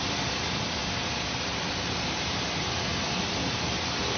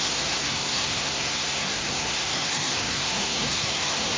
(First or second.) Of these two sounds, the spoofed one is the second